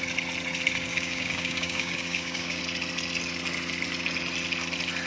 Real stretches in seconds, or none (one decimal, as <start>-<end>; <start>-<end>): 0.0-0.9; 2.6-5.1